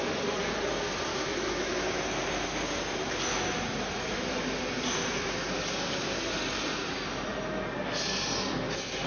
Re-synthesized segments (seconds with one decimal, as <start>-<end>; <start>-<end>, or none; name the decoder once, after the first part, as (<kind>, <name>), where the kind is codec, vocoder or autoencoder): 1.1-2.0 (autoencoder, DAC-VAE)